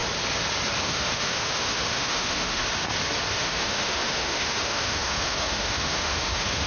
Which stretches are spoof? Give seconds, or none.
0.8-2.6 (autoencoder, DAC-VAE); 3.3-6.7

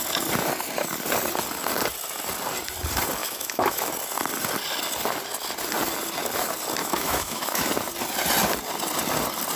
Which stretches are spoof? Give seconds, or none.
3.2-3.9 (autoencoder, DAC-VAE); 6.8-7.7

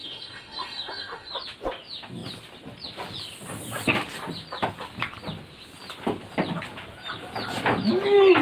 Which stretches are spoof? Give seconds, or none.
0.0-1.3 (autoencoder, DAC-VAE)

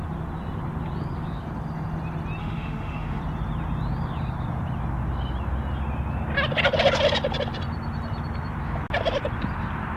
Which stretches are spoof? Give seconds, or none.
2.4-3.2 (autoencoder, DAC-VAE)

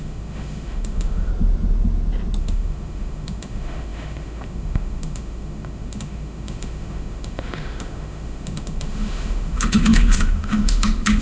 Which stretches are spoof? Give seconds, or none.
0.0-1.3 (autoencoder, DAC-VAE); 2.4-11.2

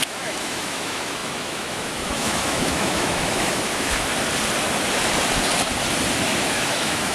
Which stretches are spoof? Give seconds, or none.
0.0-4.1 (autoencoder, DAC-VAE); 6.4-7.1

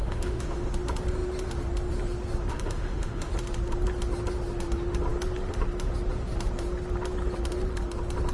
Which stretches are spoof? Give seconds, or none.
0.0-0.7 (autoencoder, DAC-VAE); 2.5-3.3

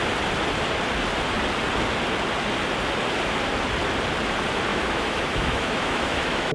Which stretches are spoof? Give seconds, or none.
4.7-6.5 (autoencoder, DAC-VAE)